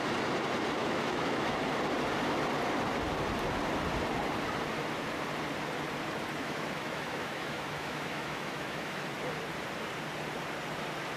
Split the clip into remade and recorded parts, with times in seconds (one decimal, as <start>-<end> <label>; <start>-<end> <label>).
0.0-0.8 recorded; 0.8-1.6 remade; 1.6-6.4 recorded; 6.4-9.1 remade; 9.1-11.2 recorded

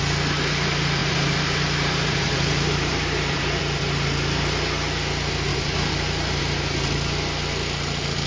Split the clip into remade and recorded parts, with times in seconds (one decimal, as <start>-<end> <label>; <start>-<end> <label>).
0.0-1.0 recorded; 1.0-3.6 remade; 3.6-5.5 recorded; 5.5-6.4 remade; 6.4-8.3 recorded

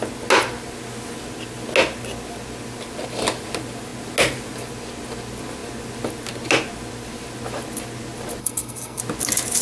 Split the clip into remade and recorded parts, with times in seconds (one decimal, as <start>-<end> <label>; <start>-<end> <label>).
0.0-8.4 recorded; 8.4-9.0 remade; 9.0-9.6 recorded

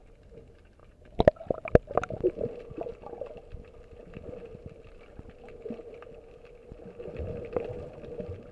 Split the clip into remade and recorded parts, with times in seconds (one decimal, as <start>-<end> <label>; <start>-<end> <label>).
0.0-6.6 recorded; 6.6-7.9 remade; 7.9-8.5 recorded

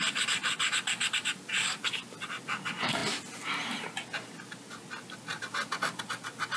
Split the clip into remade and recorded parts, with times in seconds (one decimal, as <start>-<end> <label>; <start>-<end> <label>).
0.0-3.0 remade; 3.0-5.4 recorded; 5.4-6.6 remade

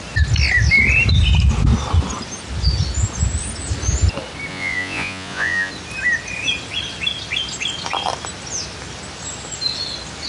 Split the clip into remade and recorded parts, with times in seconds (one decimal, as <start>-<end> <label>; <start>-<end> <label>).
0.0-4.5 recorded; 4.5-5.7 remade; 5.7-10.3 recorded

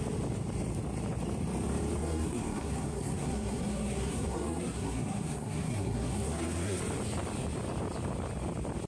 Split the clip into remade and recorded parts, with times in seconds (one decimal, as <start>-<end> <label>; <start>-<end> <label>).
0.0-2.0 recorded; 2.0-6.8 remade; 6.8-8.9 recorded